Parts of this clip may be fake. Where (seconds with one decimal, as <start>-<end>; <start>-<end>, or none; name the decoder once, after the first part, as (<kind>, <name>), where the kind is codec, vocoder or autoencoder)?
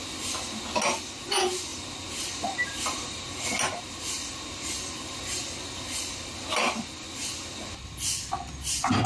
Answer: 1.7-4.4 (vocoder, BigVGAN v2)